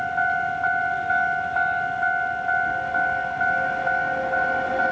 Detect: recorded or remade recorded